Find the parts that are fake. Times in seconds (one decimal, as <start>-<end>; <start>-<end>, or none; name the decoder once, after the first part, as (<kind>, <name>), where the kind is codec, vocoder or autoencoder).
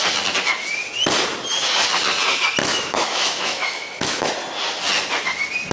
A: 2.6-4.3 (autoencoder, DAC-VAE)